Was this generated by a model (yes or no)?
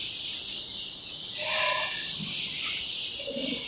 no